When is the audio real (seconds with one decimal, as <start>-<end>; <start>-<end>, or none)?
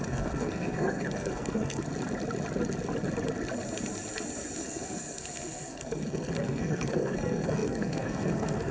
1.8-4.6